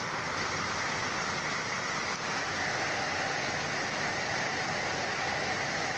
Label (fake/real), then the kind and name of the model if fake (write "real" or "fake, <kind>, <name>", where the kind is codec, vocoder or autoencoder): real